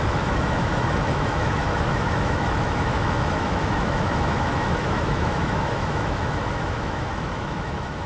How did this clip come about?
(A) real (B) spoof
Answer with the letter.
B